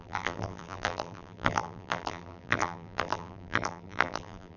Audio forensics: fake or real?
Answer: fake